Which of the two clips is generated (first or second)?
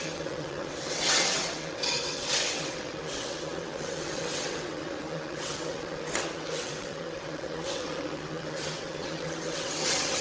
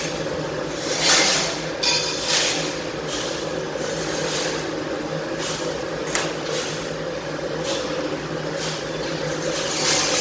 first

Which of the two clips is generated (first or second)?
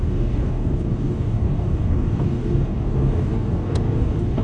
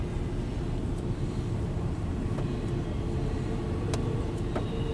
first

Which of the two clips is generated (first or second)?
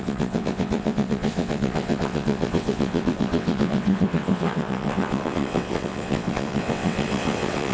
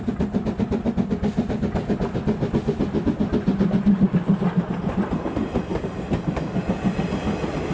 first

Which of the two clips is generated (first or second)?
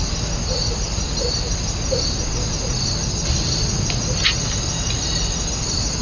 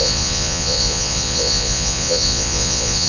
second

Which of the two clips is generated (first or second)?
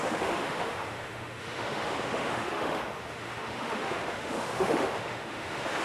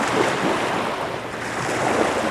first